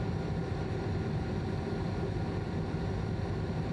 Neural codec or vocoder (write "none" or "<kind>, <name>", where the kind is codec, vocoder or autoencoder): none